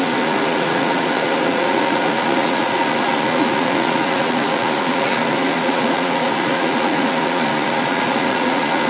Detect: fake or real fake